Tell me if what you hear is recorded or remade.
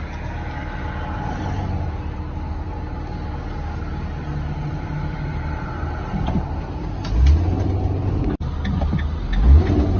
recorded